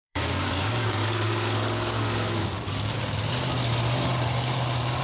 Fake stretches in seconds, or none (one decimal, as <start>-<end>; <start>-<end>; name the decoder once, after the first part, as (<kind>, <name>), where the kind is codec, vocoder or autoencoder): 0.0-3.0 (codec, DAC)